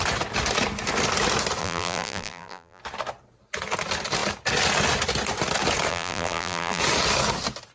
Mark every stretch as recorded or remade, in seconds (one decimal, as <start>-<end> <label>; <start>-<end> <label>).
0.0-1.6 recorded; 1.6-2.8 remade; 2.8-5.9 recorded; 5.9-6.8 remade; 6.8-7.7 recorded